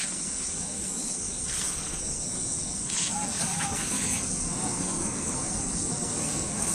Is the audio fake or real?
fake